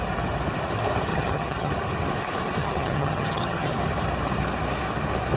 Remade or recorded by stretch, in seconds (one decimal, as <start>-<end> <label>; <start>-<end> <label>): 0.0-1.1 recorded; 1.1-1.7 remade; 1.7-2.6 recorded; 2.6-3.7 remade; 3.7-5.4 recorded